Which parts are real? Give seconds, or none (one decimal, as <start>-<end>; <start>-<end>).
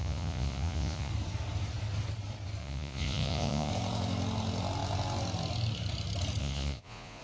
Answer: 1.1-2.6; 3.7-6.4